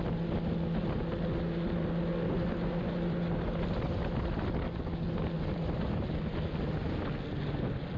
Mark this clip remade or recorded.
recorded